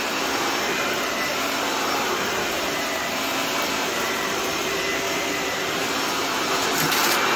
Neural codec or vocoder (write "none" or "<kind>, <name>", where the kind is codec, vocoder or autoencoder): vocoder, BigVGAN v2